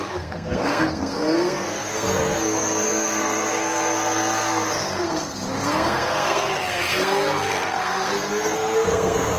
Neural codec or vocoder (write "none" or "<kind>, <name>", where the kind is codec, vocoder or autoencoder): codec, SNAC